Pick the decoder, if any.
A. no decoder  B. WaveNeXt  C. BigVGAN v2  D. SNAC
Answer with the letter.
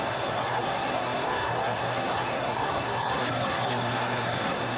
D